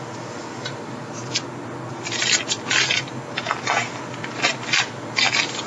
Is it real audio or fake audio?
real